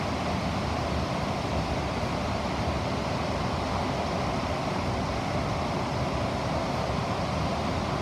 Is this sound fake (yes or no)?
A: no